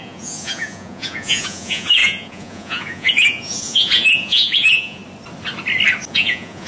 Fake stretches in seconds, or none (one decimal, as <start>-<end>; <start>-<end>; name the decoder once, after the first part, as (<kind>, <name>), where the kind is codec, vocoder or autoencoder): 0.0-5.0 (vocoder, Vocos); 6.1-6.7